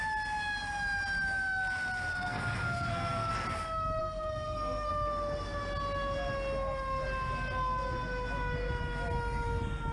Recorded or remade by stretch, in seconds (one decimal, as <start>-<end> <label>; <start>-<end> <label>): 0.0-2.1 recorded; 2.1-3.3 remade; 3.3-4.0 recorded; 4.0-4.9 remade; 4.9-9.9 recorded